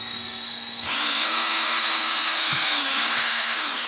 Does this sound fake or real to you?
fake